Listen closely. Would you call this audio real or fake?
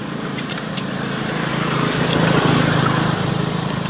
fake